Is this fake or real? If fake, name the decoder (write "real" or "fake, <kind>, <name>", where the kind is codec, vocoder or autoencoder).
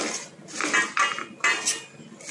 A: real